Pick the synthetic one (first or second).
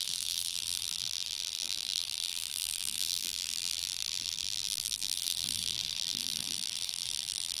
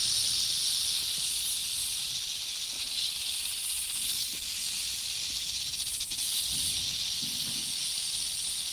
first